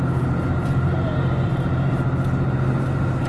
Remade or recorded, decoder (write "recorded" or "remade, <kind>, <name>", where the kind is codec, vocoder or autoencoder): remade, vocoder, BigVGAN v2